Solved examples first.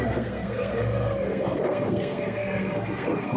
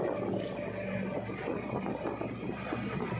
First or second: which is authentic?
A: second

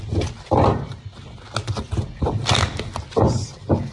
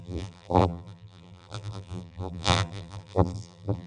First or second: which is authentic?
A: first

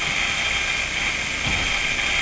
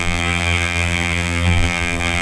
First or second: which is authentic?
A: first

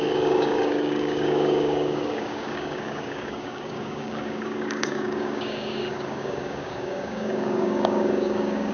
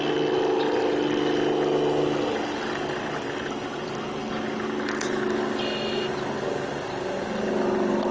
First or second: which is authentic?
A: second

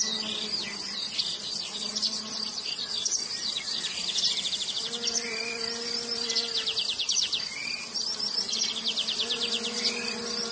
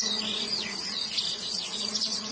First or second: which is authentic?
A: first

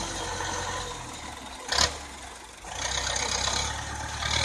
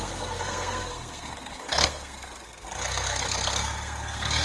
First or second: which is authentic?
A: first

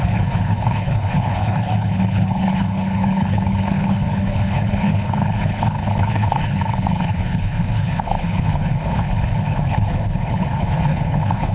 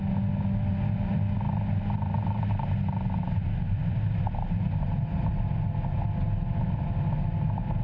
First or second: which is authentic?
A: second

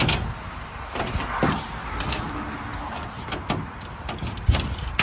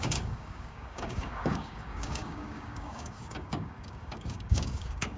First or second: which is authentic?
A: first